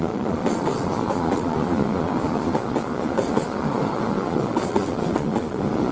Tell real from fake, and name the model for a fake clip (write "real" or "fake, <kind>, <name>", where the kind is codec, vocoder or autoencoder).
fake, vocoder, Vocos